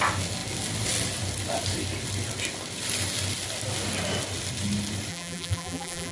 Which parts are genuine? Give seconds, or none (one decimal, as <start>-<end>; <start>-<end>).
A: 0.0-5.1